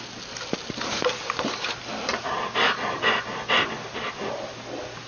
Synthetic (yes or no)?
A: no